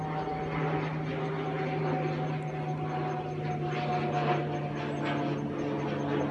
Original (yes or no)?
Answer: yes